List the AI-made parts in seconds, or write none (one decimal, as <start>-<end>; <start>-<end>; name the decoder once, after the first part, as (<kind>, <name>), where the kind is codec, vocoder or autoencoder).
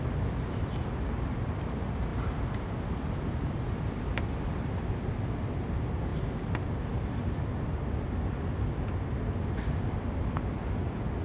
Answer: none